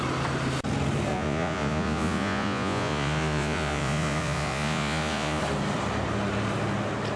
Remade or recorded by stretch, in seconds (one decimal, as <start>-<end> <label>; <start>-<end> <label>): 0.0-1.1 recorded; 1.1-5.4 remade; 5.4-7.2 recorded